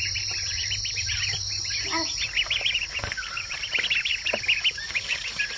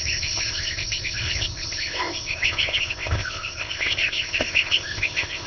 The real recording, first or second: first